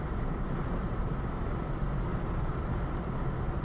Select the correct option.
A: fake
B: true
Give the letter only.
B